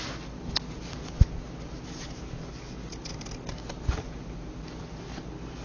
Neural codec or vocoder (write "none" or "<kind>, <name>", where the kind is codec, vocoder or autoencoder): none